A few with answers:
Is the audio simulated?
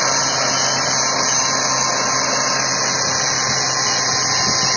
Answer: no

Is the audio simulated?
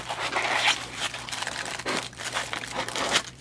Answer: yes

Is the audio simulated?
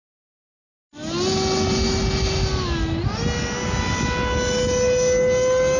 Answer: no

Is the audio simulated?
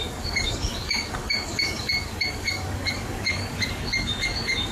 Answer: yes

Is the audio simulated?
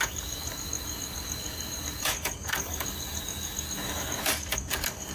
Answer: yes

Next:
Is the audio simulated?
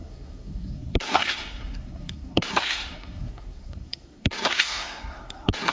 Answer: yes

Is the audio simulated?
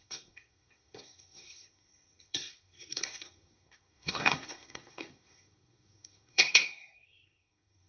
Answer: yes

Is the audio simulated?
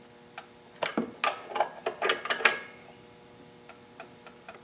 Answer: no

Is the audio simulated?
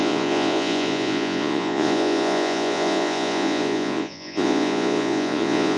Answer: yes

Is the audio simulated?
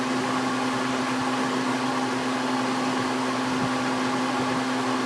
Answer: no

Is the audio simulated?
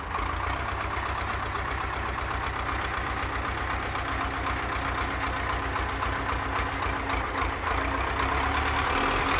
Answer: no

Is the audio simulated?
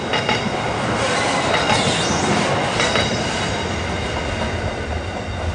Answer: no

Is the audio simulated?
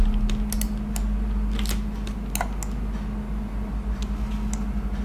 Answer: no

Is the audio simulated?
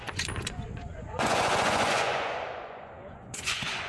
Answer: yes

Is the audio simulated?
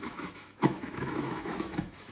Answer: yes